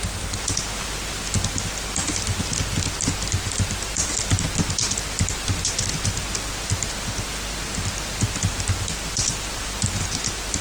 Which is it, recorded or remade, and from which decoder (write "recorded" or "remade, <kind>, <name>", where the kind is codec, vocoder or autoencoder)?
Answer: recorded